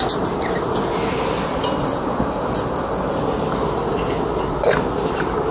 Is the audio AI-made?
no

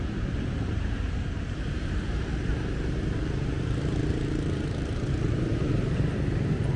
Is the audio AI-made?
yes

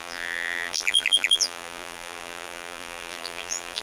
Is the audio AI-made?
yes